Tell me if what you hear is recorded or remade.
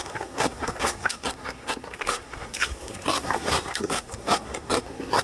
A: remade